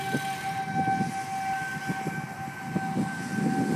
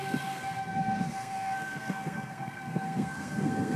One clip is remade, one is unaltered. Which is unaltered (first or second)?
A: first